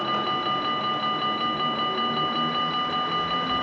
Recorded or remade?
recorded